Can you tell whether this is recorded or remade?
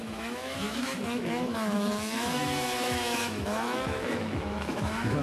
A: remade